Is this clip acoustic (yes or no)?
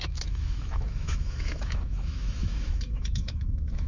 no